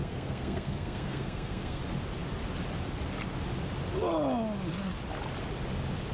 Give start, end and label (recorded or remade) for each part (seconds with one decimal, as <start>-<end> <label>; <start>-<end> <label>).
0.0-1.8 remade; 1.8-6.1 recorded